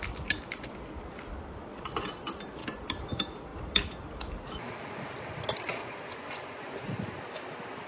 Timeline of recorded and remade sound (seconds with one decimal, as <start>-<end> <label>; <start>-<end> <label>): 0.0-5.8 recorded; 5.8-7.2 remade; 7.2-7.9 recorded